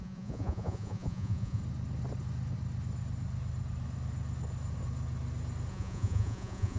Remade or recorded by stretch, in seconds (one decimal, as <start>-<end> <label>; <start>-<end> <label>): 0.0-1.6 remade; 1.6-5.7 recorded; 5.7-6.8 remade